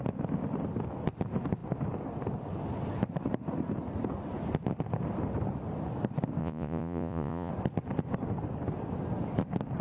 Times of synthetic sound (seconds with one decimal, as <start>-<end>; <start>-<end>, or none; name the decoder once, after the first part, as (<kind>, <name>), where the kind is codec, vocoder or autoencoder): 6.4-7.5 (vocoder, Vocos)